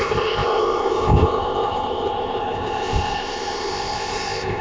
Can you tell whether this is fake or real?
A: fake